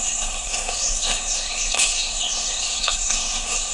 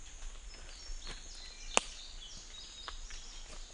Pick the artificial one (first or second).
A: first